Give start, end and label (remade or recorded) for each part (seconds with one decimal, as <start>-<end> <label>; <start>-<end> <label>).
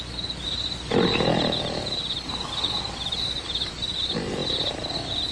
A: 0.0-5.3 recorded